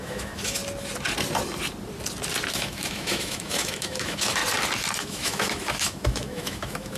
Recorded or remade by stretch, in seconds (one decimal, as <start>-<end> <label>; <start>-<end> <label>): 0.0-0.6 remade; 0.6-2.5 recorded; 2.5-4.4 remade; 4.4-5.0 recorded; 5.0-7.0 remade